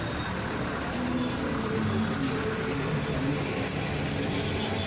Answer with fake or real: real